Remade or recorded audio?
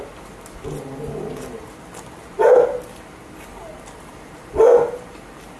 recorded